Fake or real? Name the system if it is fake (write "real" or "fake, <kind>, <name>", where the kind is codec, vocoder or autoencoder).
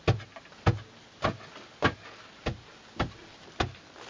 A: real